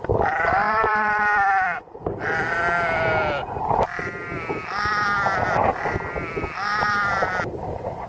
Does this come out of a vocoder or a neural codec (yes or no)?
yes